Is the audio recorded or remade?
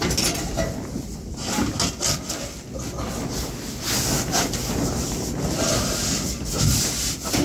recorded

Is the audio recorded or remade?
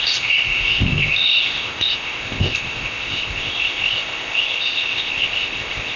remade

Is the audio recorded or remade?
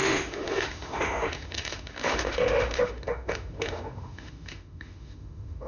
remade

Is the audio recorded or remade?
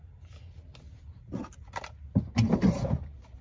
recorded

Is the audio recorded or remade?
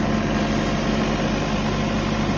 recorded